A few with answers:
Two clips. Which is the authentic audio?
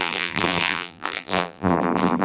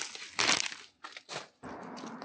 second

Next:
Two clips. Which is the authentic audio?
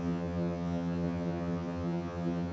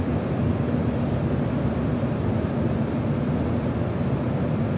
second